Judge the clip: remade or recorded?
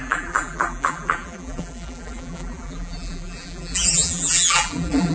remade